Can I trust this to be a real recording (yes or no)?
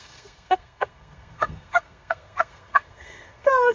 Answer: no